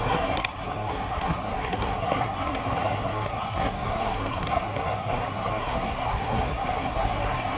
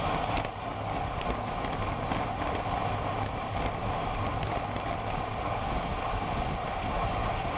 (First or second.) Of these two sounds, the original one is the second